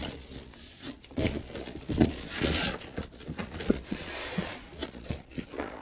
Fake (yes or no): yes